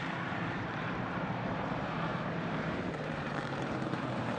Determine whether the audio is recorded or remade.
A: remade